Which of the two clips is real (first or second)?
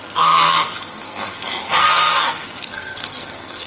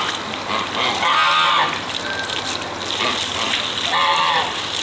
second